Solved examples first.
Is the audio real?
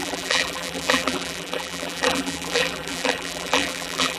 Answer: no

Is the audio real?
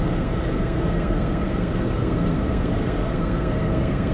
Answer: no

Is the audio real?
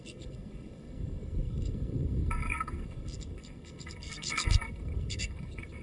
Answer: no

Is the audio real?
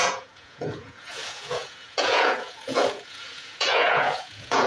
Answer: no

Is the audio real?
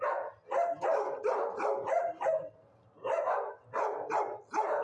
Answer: yes